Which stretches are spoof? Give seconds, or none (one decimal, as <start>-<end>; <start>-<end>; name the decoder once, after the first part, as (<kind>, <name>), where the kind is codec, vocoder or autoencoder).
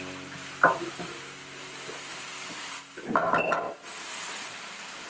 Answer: none